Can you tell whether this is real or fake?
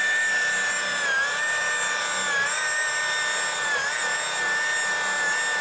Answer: real